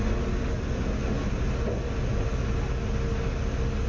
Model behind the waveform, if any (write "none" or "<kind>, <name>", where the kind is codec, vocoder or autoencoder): none